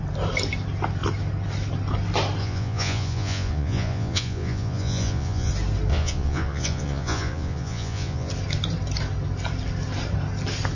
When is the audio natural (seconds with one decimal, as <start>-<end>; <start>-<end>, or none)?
0.0-2.4; 5.5-5.9; 8.3-10.8